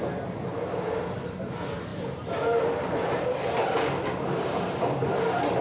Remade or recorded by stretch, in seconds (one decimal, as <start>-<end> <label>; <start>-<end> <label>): 0.0-1.9 recorded; 1.9-5.6 remade